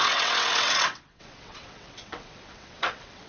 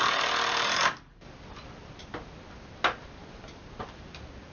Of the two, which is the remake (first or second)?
first